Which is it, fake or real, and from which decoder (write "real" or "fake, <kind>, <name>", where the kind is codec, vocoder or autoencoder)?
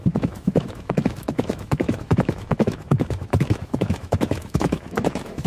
fake, autoencoder, DAC-VAE